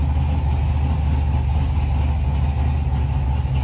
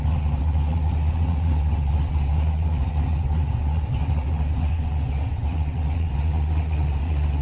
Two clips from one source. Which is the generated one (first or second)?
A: second